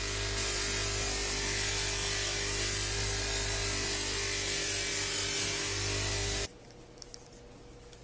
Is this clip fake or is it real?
real